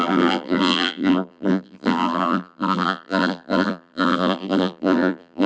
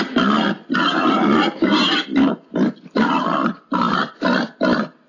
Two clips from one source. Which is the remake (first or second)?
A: first